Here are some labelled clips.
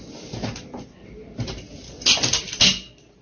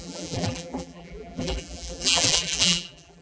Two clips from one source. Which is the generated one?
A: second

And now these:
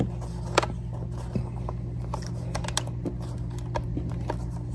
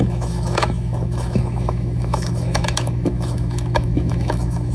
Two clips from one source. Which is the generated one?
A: second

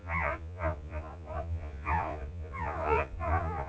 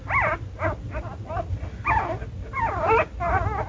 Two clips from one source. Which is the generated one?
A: first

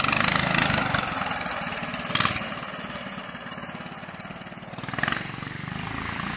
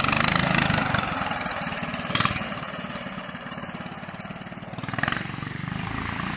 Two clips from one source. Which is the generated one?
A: second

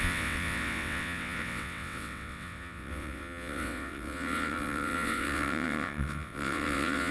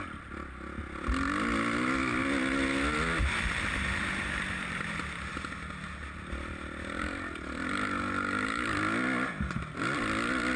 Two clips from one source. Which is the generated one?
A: first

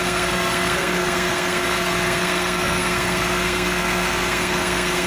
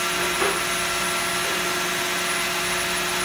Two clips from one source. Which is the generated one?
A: first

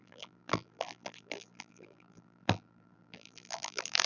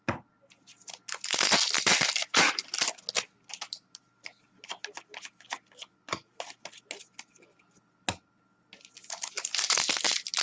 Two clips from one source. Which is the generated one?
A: first